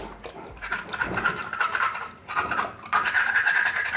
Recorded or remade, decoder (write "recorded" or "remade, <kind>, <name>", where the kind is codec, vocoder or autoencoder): remade, vocoder, BigVGAN v2